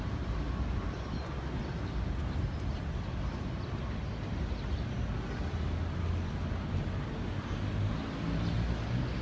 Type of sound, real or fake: real